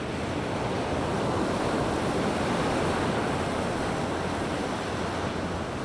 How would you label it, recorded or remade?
recorded